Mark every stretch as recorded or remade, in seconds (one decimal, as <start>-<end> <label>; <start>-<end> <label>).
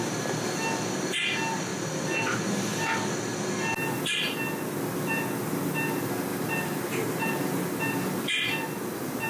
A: 0.0-6.3 recorded; 6.3-7.8 remade; 7.8-9.3 recorded